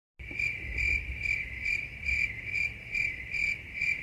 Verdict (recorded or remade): recorded